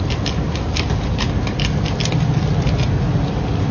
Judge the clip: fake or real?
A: real